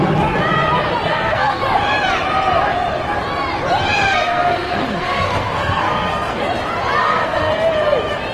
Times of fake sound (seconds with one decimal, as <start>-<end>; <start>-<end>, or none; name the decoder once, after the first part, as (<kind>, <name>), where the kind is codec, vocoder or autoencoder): 1.1-1.6 (codec, SNAC); 4.0-6.4; 7.0-7.5